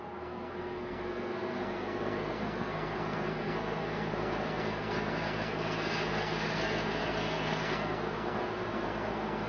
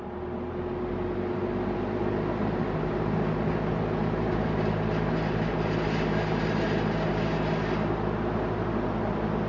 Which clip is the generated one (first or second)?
first